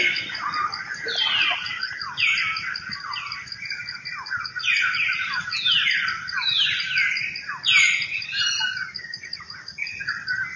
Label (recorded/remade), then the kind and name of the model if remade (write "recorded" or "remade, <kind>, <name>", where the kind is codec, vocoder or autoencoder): recorded